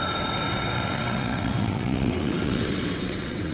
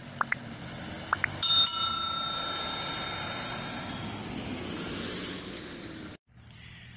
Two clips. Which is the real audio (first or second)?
second